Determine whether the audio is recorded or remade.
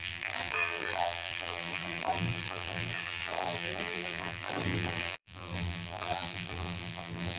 remade